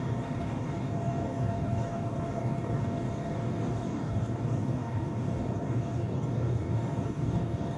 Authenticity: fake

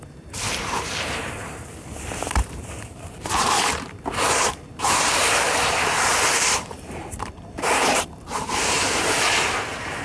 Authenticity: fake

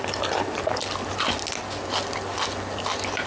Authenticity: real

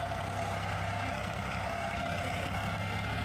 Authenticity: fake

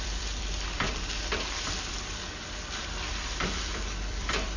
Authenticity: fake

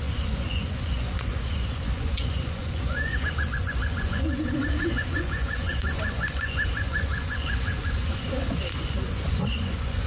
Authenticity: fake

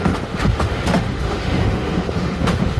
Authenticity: fake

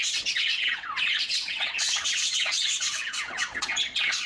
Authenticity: fake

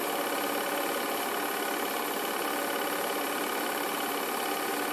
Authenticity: real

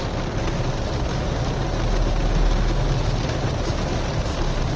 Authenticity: real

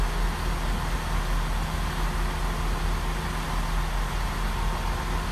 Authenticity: real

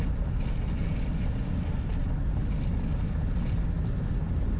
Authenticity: real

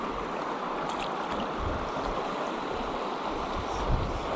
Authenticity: real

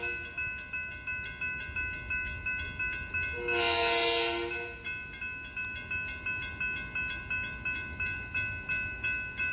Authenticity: real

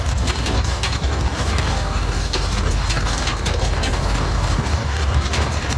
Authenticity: fake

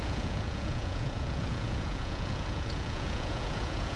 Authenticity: fake